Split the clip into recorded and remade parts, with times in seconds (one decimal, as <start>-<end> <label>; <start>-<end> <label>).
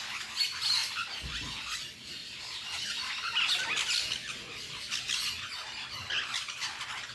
0.0-0.8 recorded; 0.8-1.6 remade; 1.6-2.2 recorded; 2.2-3.1 remade; 3.1-5.6 recorded; 5.6-6.1 remade; 6.1-7.1 recorded